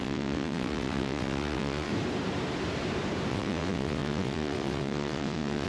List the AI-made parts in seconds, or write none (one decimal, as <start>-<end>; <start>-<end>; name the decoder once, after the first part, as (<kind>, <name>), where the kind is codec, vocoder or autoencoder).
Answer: 0.0-1.9 (vocoder, WaveNeXt); 3.3-5.7